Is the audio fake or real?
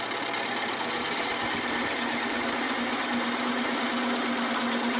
real